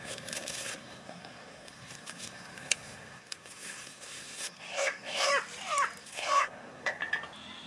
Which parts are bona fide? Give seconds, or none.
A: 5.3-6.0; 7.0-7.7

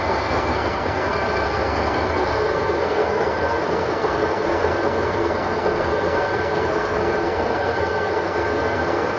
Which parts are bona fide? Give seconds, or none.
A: none

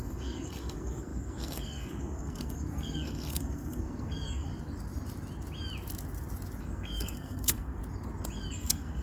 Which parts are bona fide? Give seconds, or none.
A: 4.5-6.6; 7.8-8.5

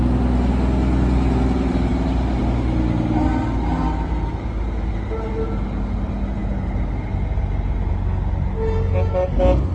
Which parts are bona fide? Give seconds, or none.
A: 0.0-9.7

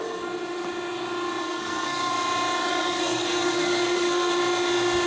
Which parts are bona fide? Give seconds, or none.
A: 0.0-1.4; 2.1-2.7; 4.3-5.1

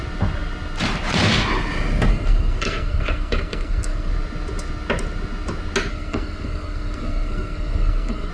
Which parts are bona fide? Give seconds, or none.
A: 0.0-2.1; 4.1-5.9

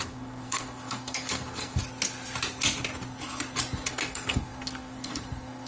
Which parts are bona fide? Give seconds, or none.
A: 1.8-3.9

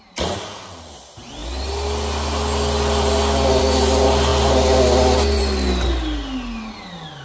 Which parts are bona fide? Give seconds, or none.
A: 0.0-7.2